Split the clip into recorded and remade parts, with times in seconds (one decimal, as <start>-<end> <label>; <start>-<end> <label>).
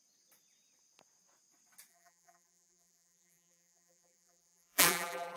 0.0-1.9 recorded; 1.9-5.4 remade